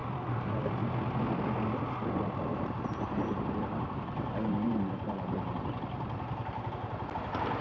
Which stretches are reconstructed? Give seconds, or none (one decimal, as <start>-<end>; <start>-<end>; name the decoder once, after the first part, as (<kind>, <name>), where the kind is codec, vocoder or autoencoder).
2.5-6.7 (vocoder, BigVGAN v2)

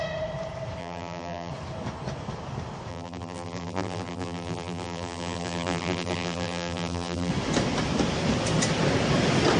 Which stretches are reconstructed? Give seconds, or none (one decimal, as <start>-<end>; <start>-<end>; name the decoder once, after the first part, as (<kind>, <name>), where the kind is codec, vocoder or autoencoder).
0.8-1.5 (vocoder, BigVGAN v2); 2.9-7.3

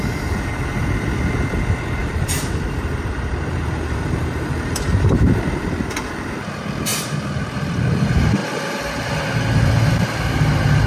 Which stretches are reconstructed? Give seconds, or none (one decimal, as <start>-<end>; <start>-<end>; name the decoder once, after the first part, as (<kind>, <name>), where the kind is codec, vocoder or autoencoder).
2.0-5.8 (vocoder, BigVGAN v2); 6.9-7.8; 8.4-9.1

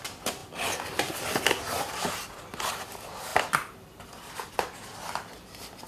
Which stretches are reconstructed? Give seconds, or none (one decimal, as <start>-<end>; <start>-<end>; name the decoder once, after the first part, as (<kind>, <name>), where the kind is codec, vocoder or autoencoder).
0.0-5.9 (vocoder, BigVGAN v2)

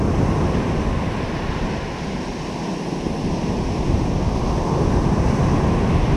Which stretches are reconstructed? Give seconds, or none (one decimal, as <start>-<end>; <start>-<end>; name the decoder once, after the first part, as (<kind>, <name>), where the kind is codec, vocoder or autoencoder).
none

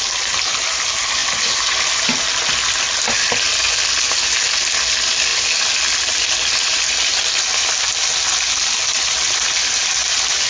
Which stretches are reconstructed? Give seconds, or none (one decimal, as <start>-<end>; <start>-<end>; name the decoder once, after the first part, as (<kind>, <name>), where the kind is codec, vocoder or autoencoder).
none

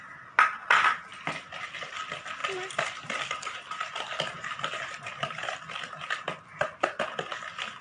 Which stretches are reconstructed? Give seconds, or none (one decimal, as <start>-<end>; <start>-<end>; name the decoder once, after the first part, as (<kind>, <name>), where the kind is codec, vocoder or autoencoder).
1.1-1.9 (vocoder, BigVGAN v2)